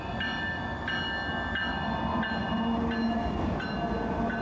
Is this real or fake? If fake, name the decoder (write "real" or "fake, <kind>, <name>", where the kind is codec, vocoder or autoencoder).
real